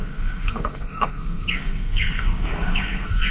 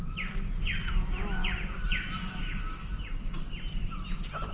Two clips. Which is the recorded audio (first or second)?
second